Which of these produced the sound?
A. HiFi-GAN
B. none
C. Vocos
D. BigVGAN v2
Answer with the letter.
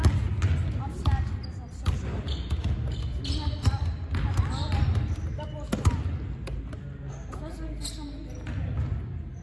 B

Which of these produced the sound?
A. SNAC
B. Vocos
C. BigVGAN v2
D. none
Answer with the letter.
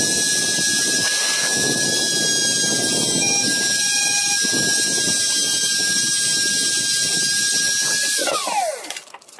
D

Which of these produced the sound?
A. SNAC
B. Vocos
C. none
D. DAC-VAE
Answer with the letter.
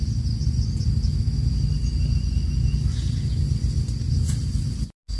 C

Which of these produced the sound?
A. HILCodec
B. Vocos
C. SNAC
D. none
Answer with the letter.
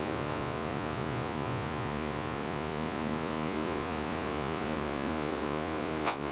B